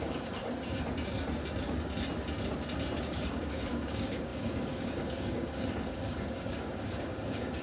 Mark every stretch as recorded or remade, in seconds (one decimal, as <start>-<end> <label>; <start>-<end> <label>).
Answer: 0.0-0.4 remade; 0.4-3.0 recorded; 3.0-7.6 remade